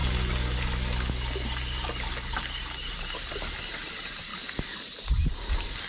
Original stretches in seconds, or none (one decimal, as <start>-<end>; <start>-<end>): 0.0-5.9